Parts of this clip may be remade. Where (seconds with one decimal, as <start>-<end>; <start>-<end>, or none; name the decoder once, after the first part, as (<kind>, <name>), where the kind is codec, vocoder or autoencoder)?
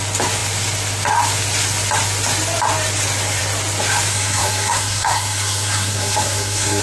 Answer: 4.1-6.8 (codec, SNAC)